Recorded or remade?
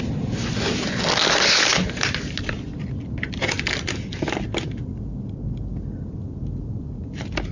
recorded